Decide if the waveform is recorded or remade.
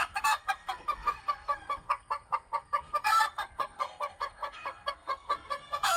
remade